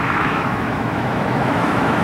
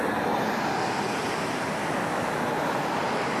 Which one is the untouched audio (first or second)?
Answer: second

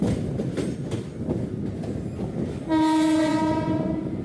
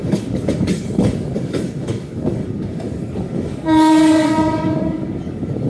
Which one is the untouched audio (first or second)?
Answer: first